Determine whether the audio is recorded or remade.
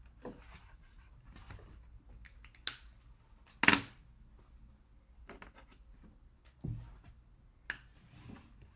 recorded